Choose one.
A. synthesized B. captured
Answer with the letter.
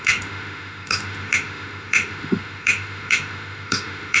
A